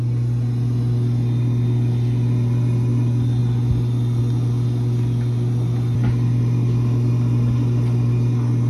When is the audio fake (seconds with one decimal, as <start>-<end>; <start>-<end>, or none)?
none